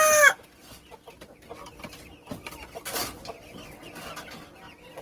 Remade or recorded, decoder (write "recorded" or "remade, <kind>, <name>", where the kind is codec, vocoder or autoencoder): recorded